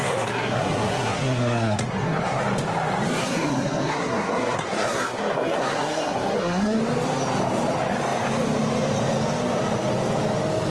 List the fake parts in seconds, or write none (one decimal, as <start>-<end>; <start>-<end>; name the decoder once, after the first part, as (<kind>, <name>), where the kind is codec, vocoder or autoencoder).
0.0-2.4 (codec, SNAC); 3.2-6.8